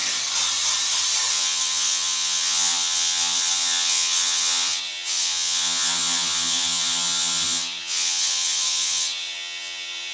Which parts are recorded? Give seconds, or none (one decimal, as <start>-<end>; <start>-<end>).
0.0-1.3